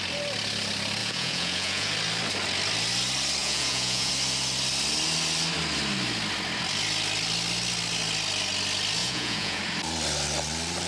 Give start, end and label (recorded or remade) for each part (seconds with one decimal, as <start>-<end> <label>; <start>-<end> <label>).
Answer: 0.0-1.0 recorded; 1.0-1.9 remade; 1.9-3.4 recorded; 3.4-4.1 remade; 4.1-9.0 recorded; 9.0-9.6 remade; 9.6-10.9 recorded